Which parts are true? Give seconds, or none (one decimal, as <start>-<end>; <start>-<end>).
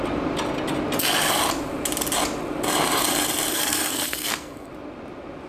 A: 0.0-3.5; 4.7-5.5